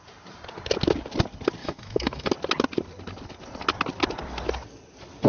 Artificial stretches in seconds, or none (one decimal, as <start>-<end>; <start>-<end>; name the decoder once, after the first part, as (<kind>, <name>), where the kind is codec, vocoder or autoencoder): 1.6-2.3 (autoencoder, DAC-VAE)